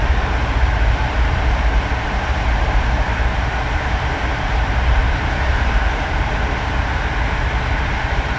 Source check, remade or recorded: remade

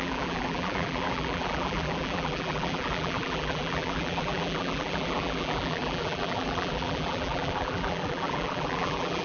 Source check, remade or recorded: remade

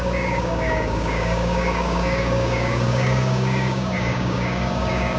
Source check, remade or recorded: remade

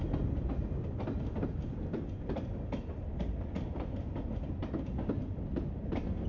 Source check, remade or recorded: recorded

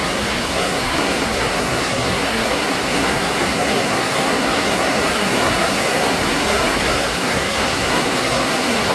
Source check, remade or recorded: remade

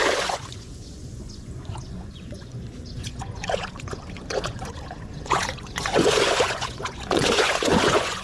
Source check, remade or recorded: remade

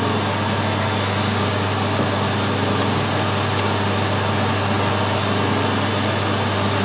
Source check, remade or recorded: recorded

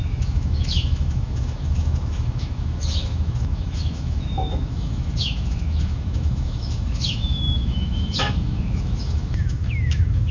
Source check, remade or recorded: remade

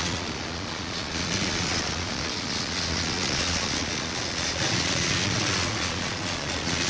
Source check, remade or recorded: remade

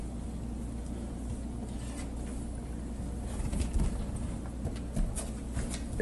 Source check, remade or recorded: recorded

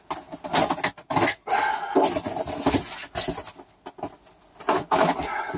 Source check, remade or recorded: recorded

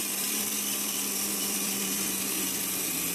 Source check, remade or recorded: remade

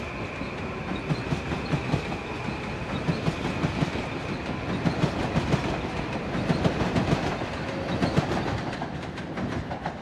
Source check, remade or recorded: recorded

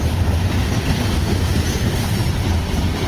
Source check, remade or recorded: remade